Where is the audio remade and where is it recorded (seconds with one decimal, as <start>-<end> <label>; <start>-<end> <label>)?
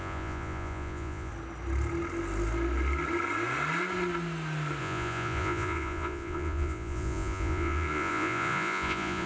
0.0-1.3 remade; 1.3-4.8 recorded; 4.8-9.3 remade